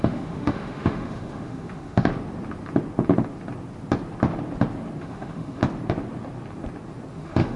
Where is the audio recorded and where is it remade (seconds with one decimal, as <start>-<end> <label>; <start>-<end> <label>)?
0.0-2.1 remade; 2.1-5.0 recorded; 5.0-5.6 remade; 5.6-7.1 recorded; 7.1-7.6 remade